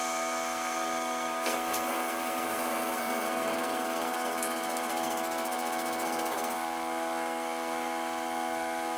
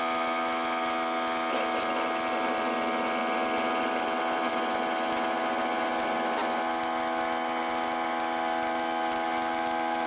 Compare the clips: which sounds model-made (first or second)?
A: first